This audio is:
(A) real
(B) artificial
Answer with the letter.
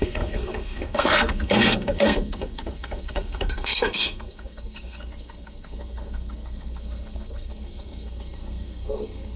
B